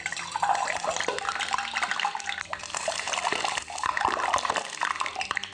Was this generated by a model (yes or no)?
no